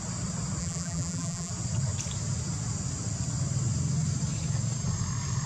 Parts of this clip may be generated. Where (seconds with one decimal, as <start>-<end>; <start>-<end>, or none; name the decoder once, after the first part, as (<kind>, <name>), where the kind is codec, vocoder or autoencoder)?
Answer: 0.6-1.5 (vocoder, BigVGAN v2)